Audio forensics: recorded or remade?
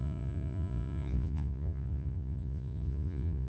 remade